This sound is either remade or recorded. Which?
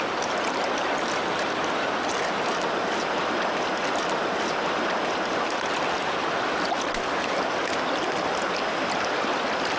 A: recorded